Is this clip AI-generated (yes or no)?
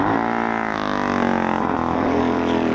no